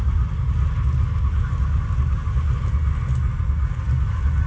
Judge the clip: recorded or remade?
recorded